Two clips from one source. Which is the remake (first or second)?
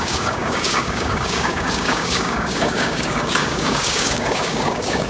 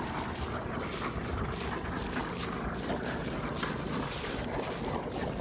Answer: first